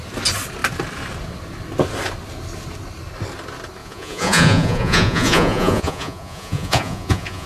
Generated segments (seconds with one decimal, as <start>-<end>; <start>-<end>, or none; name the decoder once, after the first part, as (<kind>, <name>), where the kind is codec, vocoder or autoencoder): 3.8-7.5 (vocoder, Vocos)